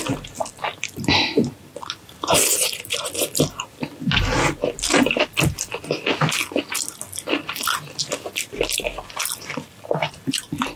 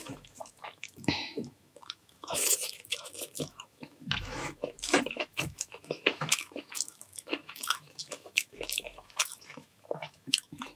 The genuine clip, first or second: first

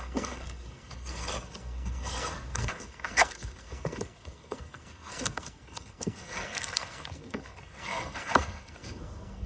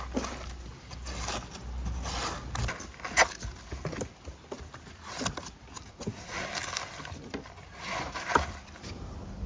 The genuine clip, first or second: second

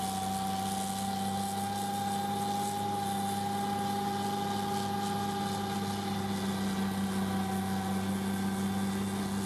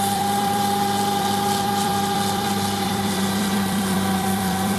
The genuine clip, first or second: first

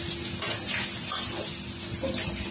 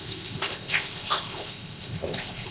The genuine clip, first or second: first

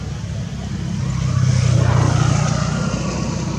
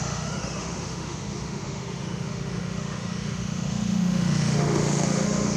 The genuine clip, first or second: first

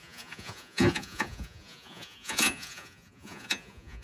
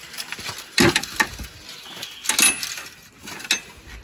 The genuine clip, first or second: second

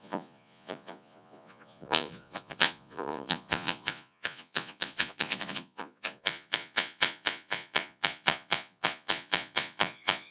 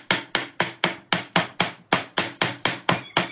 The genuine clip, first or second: second